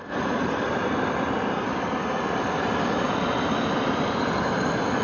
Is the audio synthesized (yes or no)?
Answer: no